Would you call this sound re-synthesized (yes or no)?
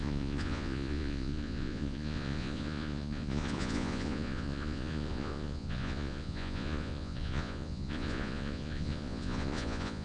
yes